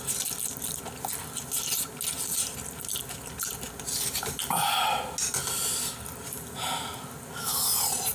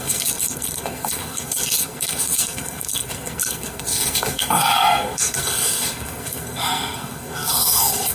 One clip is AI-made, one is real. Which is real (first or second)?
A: first